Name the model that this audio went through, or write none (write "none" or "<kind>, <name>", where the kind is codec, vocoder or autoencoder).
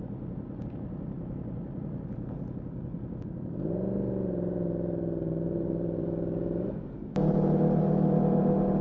none